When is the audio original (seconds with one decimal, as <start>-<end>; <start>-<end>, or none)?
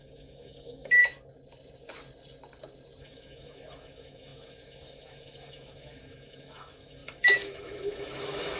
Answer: 1.0-3.0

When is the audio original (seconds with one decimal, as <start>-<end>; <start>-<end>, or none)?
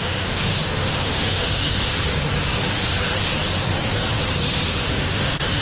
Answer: 1.9-4.7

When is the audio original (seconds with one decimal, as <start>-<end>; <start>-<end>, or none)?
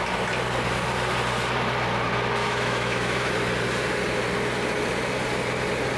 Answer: 0.0-2.4; 3.3-6.0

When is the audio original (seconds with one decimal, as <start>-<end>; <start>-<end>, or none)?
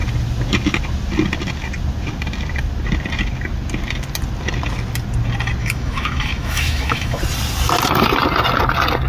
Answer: 0.0-5.6; 7.2-9.1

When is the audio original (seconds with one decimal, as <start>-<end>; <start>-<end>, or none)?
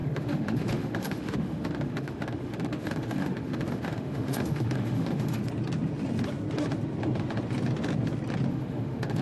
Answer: 5.4-8.5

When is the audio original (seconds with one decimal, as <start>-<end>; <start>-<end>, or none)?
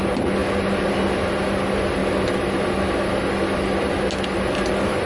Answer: 0.0-5.1